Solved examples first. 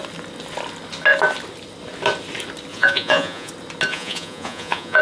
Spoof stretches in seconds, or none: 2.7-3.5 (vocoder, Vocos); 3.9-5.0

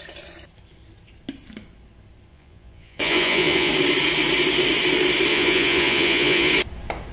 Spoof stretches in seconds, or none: 2.3-3.7 (vocoder, Vocos); 5.3-6.5